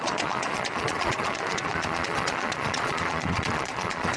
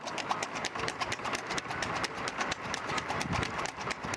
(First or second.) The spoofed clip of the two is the first